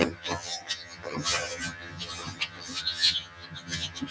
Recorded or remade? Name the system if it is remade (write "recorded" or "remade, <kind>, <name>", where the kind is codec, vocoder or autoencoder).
remade, vocoder, HiFi-GAN